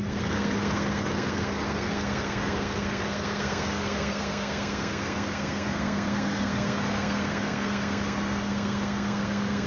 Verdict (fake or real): fake